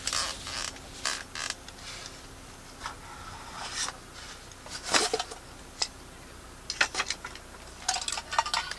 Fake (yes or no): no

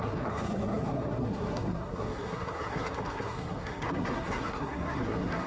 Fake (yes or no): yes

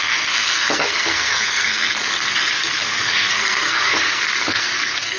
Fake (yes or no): yes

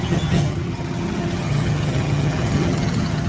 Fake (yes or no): yes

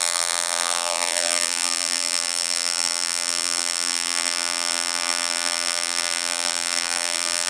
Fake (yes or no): yes